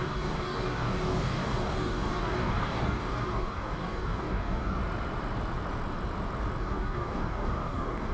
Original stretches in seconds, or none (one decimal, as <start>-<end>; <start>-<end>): 4.8-6.6